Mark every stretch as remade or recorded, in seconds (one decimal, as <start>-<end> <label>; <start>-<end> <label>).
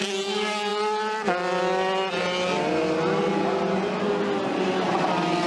0.0-5.5 recorded